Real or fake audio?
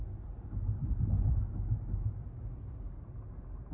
real